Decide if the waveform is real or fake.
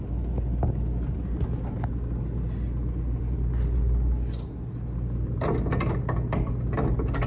real